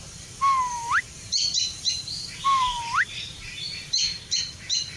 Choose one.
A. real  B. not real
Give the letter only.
B